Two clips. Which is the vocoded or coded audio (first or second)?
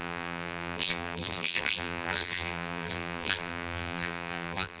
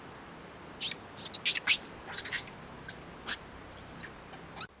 first